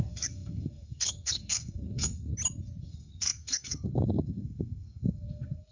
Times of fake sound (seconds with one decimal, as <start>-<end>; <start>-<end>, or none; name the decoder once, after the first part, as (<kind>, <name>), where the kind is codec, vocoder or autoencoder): 0.0-2.3 (codec, SNAC); 2.8-5.7